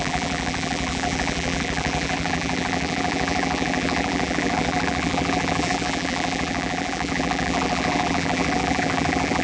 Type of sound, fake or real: fake